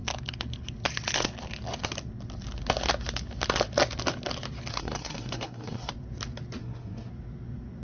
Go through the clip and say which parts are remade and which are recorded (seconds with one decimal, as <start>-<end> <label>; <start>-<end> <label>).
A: 0.0-4.7 recorded; 4.7-5.9 remade; 5.9-6.6 recorded; 6.6-7.1 remade; 7.1-7.8 recorded